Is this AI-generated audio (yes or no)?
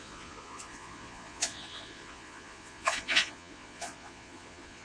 yes